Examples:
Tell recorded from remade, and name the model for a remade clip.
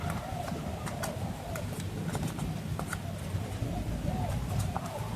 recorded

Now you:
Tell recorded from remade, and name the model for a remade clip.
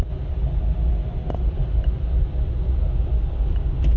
recorded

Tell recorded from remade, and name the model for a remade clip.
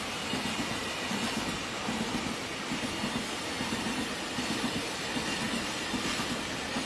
recorded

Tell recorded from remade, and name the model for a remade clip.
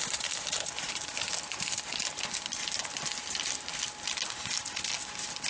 recorded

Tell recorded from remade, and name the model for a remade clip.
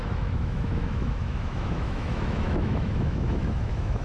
remade, autoencoder, DAC-VAE